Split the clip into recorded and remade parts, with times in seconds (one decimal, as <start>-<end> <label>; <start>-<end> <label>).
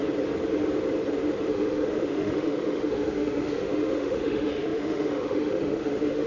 0.0-1.5 recorded; 1.5-6.3 remade